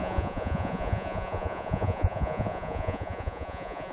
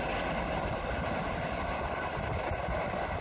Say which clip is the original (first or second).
second